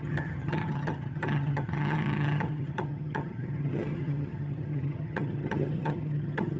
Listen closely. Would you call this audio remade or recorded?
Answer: remade